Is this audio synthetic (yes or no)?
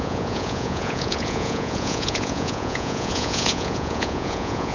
yes